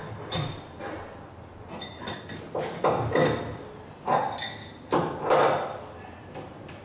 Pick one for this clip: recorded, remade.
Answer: recorded